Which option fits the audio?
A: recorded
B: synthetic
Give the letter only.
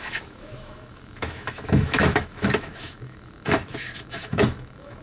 B